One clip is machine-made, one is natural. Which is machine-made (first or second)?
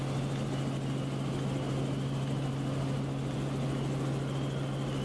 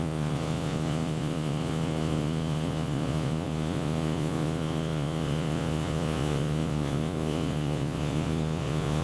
second